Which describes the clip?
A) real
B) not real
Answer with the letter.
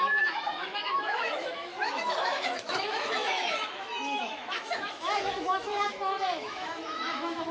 B